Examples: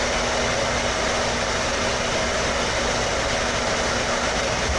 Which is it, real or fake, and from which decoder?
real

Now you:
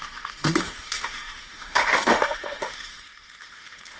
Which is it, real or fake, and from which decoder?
fake, autoencoder, DAC-VAE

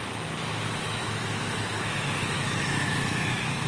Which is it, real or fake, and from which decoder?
fake, autoencoder, DAC-VAE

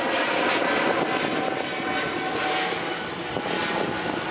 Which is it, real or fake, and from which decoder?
real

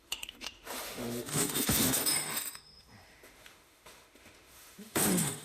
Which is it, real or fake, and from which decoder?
fake, autoencoder, DAC-VAE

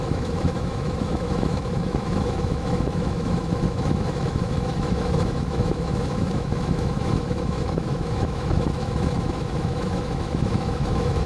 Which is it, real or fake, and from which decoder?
fake, autoencoder, DAC-VAE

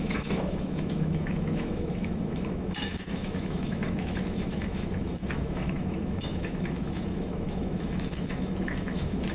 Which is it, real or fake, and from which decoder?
fake, autoencoder, DAC-VAE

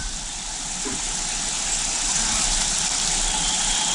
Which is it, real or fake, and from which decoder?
real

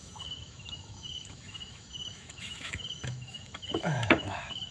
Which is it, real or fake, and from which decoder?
fake, autoencoder, DAC-VAE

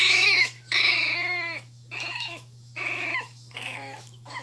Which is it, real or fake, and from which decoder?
fake, autoencoder, DAC-VAE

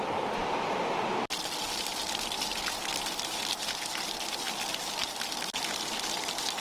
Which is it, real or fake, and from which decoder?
real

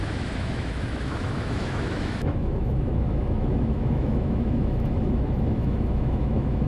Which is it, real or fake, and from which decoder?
fake, autoencoder, DAC-VAE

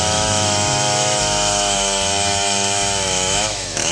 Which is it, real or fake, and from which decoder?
fake, autoencoder, DAC-VAE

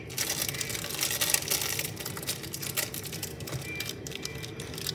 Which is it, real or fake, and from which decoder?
real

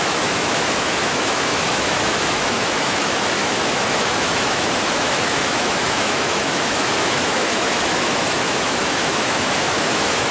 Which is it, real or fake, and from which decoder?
fake, autoencoder, DAC-VAE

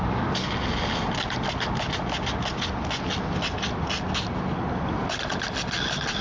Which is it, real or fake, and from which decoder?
real